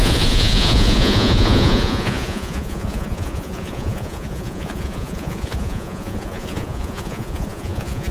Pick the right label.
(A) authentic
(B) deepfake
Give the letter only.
B